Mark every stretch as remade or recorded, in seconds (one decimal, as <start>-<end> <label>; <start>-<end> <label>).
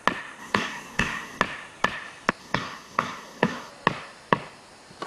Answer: 0.0-0.4 recorded; 0.4-1.4 remade; 1.4-2.4 recorded; 2.4-3.7 remade; 3.7-5.1 recorded